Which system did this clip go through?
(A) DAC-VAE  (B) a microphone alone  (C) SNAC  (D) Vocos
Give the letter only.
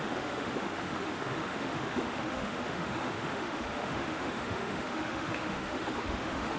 A